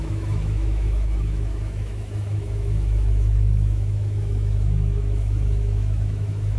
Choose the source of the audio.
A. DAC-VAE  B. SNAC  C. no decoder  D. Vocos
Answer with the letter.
A